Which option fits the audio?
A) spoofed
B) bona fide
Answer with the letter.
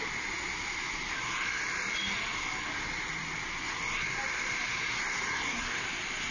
B